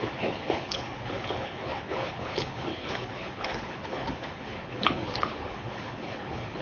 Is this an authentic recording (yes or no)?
no